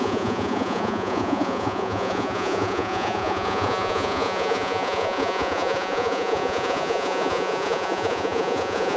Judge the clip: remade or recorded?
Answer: remade